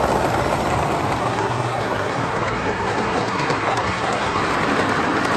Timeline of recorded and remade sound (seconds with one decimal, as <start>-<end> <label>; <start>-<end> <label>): 0.0-1.2 recorded; 1.2-4.4 remade; 4.4-5.4 recorded